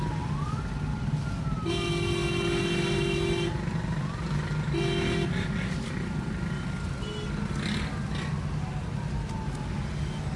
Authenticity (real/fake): real